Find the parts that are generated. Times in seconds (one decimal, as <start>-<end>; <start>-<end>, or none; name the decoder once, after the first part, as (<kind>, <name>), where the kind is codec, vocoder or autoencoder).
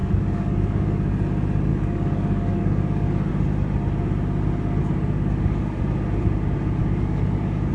0.0-1.1 (codec, DAC); 1.7-3.3; 4.8-5.8; 6.8-7.7